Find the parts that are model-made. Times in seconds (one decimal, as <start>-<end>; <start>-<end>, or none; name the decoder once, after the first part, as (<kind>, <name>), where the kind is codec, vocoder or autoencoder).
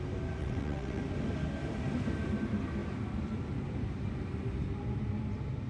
0.4-1.0 (vocoder, WaveNeXt)